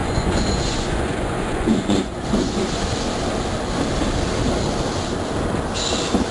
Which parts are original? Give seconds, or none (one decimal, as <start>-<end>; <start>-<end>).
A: 2.8-6.3